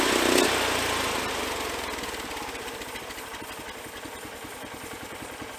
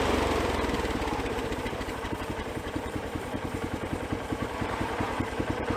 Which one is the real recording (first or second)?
first